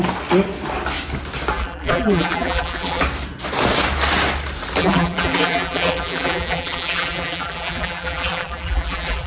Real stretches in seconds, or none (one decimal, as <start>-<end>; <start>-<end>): 0.0-1.5; 3.0-4.8